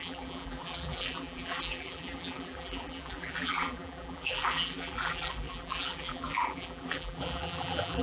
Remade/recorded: remade